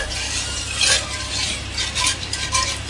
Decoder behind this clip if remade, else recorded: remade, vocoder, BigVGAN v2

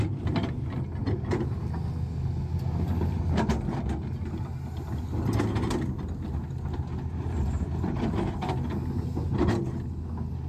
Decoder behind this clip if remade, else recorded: recorded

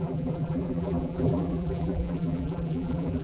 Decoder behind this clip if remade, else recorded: remade, vocoder, BigVGAN v2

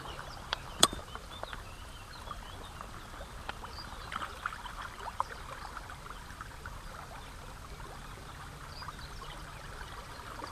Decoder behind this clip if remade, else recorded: remade, vocoder, BigVGAN v2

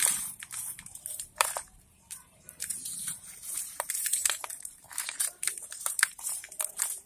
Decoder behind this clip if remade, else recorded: remade, vocoder, BigVGAN v2